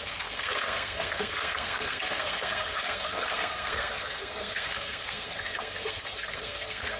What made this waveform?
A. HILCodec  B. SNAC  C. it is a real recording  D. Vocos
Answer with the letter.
B